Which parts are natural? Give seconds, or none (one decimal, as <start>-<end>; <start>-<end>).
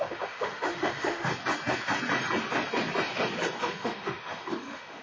1.3-3.6